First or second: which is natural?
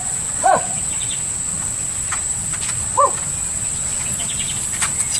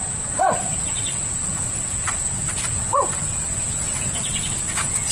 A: first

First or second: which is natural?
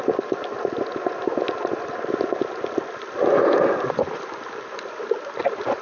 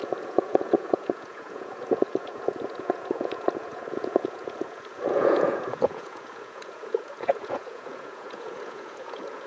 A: first